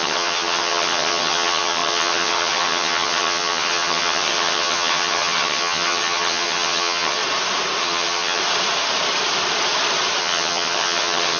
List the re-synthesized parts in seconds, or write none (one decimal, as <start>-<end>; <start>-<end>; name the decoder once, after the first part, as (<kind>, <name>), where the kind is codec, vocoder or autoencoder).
0.0-7.2 (vocoder, HiFi-GAN); 7.8-8.4; 10.2-11.4